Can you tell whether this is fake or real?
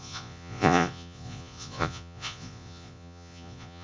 fake